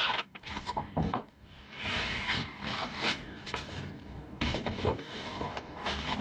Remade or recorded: remade